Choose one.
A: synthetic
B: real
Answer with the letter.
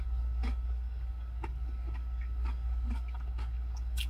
A